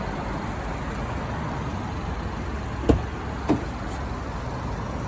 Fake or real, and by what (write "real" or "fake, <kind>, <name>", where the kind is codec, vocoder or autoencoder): real